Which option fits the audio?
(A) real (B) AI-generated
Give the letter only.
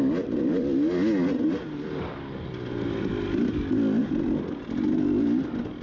A